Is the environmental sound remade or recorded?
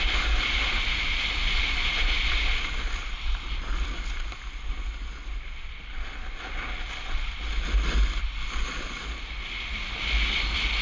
recorded